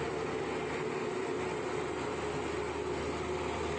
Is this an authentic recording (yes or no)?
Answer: yes